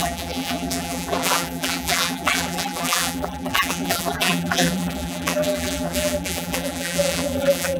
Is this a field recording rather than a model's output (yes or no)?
no